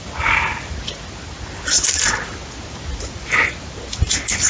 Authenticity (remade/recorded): recorded